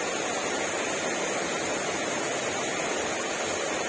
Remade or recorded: recorded